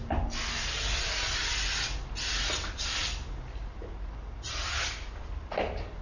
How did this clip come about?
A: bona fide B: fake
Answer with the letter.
A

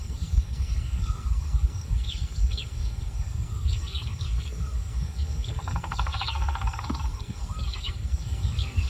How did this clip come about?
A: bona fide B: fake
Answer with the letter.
B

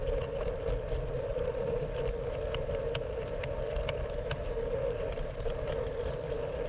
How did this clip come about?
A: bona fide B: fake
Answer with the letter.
A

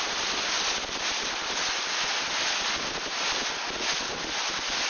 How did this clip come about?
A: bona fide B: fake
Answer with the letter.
A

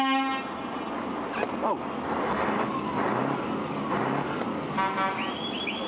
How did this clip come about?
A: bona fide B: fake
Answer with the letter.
A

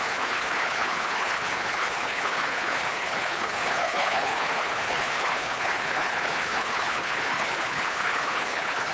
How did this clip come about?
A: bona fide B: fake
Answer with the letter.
B